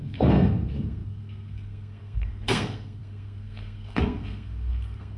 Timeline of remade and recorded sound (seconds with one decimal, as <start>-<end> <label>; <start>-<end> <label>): 0.0-5.2 remade